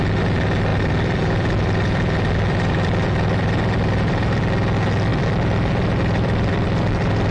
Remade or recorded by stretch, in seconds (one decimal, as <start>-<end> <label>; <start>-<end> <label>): 0.0-0.7 recorded; 0.7-4.4 remade; 4.4-5.1 recorded; 5.1-7.3 remade